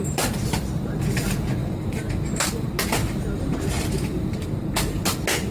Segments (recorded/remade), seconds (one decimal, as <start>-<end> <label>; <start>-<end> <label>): 0.0-1.6 recorded; 1.6-2.1 remade; 2.1-3.0 recorded; 3.0-3.8 remade; 3.8-5.5 recorded